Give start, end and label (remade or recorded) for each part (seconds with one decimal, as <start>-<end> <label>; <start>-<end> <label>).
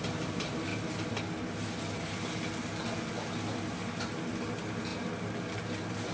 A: 0.0-6.1 recorded